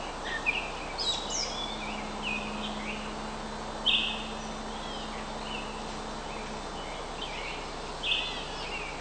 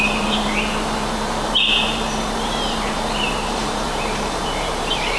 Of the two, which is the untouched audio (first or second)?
first